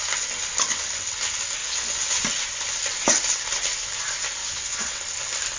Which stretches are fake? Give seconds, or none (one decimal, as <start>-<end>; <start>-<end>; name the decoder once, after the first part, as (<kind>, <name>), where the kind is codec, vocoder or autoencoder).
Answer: 1.6-2.2 (vocoder, WaveNeXt); 4.4-5.0